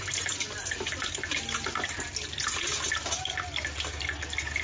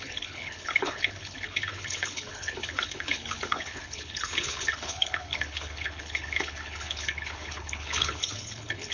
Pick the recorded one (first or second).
first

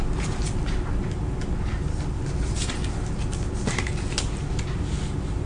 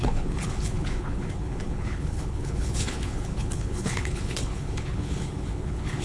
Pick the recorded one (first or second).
first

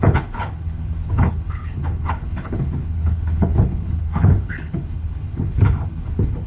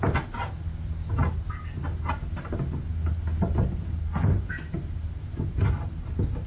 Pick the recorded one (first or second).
second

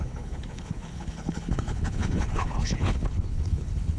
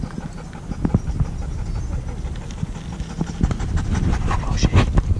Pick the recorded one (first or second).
second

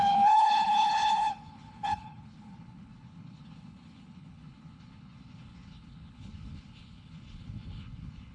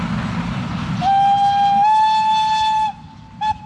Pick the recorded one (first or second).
second